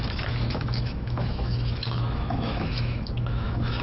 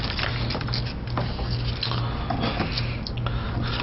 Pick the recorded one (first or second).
second